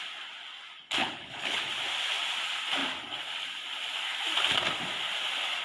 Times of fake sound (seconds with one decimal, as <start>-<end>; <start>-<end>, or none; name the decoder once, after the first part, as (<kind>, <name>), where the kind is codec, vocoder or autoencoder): 1.0-1.7 (codec, HILCodec)